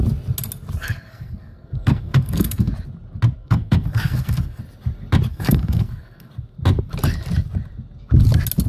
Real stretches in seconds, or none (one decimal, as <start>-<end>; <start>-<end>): 0.0-0.8; 2.7-3.4; 4.6-5.3; 6.3-8.7